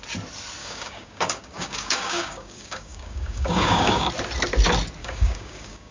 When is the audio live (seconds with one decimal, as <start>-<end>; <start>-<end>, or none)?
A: 0.0-0.6; 4.1-5.0